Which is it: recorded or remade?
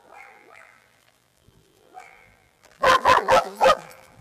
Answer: remade